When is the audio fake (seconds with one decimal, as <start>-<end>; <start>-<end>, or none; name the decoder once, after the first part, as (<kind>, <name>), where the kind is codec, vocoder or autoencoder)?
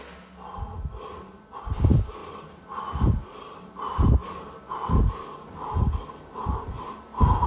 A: none